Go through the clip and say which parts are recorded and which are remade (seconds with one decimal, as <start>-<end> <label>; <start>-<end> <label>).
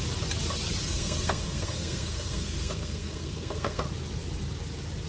0.0-0.8 recorded; 0.8-3.8 remade; 3.8-5.1 recorded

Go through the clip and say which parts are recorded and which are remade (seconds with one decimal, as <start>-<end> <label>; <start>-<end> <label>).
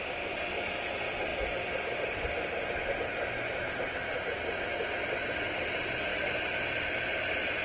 0.0-7.6 recorded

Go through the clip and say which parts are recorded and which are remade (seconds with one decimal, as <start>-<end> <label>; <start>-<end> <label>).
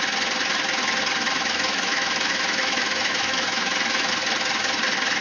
0.0-1.2 recorded; 1.2-4.1 remade; 4.1-5.2 recorded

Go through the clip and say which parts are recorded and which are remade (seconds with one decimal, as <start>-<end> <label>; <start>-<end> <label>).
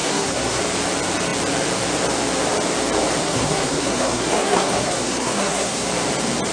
0.0-0.6 remade; 0.6-3.2 recorded; 3.2-5.9 remade; 5.9-6.5 recorded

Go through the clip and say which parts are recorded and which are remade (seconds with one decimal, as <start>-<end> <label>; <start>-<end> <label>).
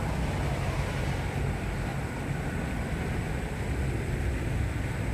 0.0-5.1 recorded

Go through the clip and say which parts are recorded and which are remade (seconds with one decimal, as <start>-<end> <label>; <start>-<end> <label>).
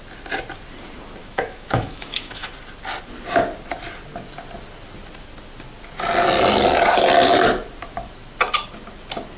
0.0-1.2 recorded; 1.2-2.5 remade; 2.5-9.4 recorded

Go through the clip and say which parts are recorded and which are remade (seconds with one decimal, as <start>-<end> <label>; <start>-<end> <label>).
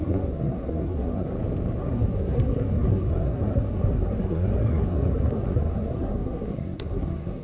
0.0-1.3 remade; 1.3-1.8 recorded; 1.8-7.4 remade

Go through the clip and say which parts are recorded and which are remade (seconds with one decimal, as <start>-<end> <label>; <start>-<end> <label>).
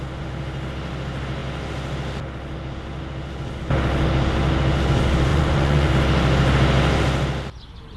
0.0-5.3 recorded; 5.3-5.9 remade; 5.9-8.0 recorded